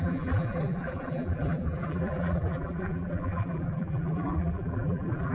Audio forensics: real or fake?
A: fake